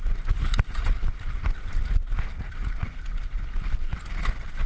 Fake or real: real